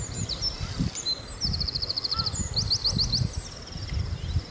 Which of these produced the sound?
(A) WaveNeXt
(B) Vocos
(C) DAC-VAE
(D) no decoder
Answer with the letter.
D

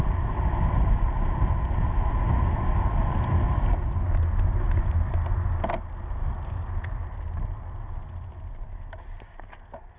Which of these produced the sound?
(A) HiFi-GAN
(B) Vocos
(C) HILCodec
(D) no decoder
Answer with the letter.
D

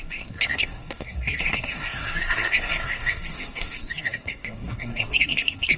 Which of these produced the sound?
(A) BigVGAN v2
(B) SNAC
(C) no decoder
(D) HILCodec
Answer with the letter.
B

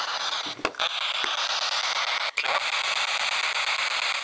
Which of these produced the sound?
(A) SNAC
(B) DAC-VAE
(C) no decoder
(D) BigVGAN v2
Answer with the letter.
C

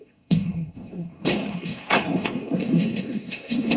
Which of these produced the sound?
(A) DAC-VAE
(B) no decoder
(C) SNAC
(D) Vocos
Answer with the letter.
C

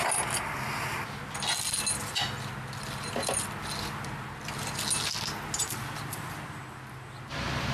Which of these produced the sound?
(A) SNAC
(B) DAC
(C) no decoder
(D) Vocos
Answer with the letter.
C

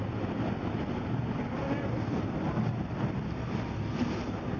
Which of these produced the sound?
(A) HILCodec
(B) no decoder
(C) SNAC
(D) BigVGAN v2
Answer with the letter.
B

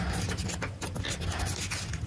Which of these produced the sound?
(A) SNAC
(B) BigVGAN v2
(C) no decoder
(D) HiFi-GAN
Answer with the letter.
C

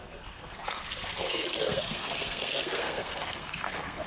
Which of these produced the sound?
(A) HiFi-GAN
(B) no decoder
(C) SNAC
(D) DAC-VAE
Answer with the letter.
C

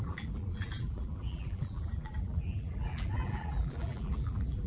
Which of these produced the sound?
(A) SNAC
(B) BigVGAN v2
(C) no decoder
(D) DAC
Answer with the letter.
B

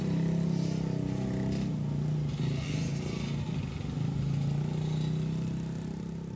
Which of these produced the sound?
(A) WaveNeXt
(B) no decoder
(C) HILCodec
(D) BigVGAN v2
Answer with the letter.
B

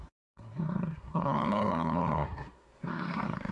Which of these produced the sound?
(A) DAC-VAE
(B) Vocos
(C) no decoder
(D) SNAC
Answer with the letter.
D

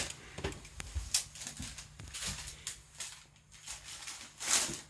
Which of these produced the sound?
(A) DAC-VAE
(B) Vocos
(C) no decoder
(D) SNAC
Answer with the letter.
C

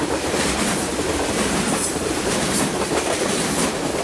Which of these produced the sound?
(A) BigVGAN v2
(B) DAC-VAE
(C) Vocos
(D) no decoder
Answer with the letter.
A